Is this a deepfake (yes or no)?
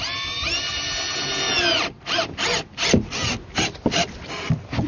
no